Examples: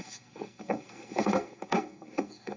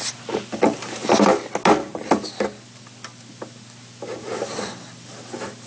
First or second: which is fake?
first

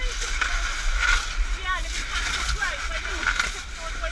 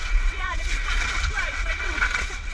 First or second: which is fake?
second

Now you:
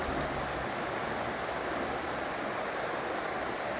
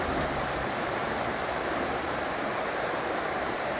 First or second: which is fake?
second